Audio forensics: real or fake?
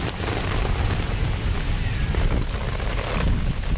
real